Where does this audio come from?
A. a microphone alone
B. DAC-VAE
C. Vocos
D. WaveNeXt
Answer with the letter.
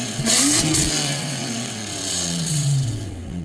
D